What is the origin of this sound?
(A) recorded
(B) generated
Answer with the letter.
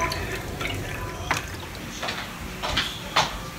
A